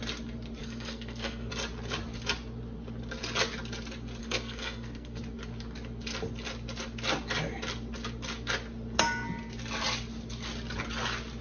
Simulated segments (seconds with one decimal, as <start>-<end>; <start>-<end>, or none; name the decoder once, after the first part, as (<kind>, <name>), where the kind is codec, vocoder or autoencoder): 0.6-1.5 (codec, SNAC); 4.2-5.2